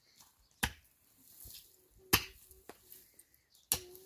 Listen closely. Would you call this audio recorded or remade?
recorded